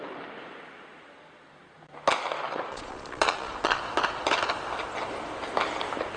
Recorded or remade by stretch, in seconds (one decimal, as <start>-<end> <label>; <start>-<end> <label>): 0.0-2.5 recorded; 2.5-3.8 remade; 3.8-6.2 recorded